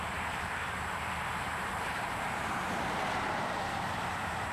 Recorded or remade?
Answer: remade